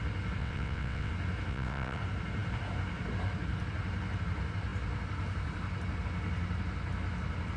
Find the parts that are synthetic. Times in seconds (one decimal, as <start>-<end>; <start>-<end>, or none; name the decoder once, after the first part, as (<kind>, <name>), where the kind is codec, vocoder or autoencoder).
0.4-1.1 (vocoder, WaveNeXt); 1.5-2.0